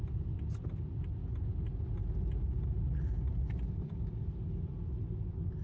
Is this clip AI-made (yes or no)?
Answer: no